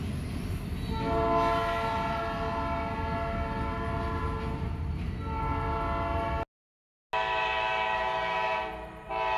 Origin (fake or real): real